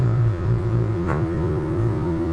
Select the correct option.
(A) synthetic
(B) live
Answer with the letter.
A